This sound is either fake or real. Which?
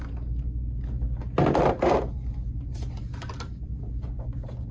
real